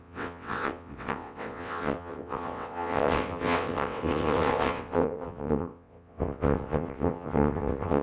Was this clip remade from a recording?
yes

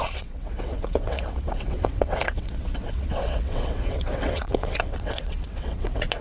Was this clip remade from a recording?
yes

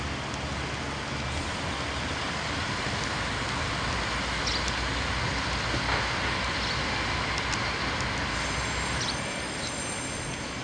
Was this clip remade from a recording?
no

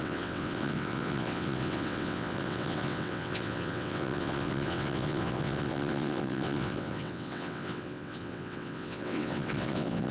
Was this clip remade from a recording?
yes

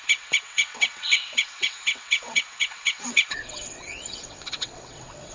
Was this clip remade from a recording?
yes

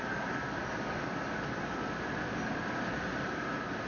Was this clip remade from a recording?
no